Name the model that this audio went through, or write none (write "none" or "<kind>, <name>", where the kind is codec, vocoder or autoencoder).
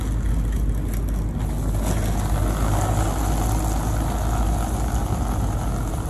none